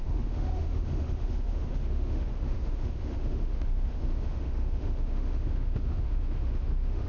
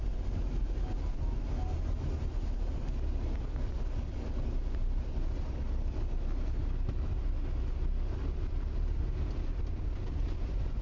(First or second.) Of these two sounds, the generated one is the first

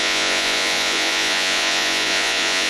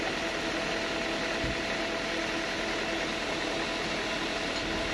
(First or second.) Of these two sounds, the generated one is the first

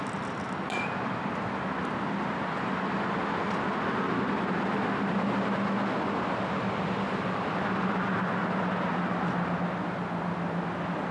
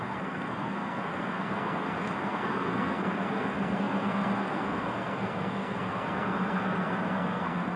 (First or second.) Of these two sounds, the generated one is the second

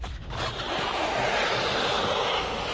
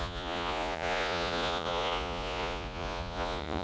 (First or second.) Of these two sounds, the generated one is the second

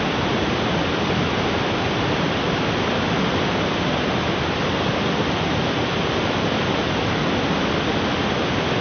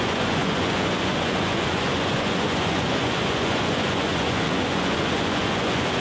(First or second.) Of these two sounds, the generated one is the second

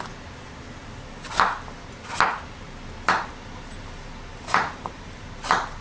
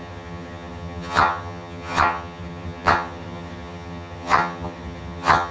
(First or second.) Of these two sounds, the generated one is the second